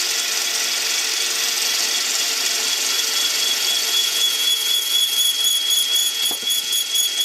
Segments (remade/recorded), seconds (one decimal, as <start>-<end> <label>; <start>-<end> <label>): 0.0-4.0 recorded; 4.0-4.8 remade; 4.8-6.0 recorded; 6.0-6.8 remade; 6.8-7.2 recorded